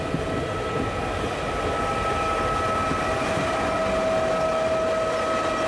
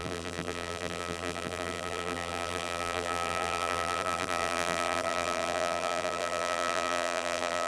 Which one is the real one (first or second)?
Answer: first